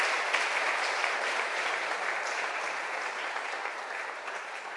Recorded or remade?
remade